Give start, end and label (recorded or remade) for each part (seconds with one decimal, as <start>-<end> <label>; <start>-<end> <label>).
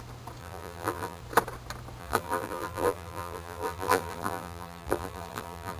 0.0-0.4 recorded; 0.4-1.2 remade; 1.2-2.0 recorded; 2.0-5.8 remade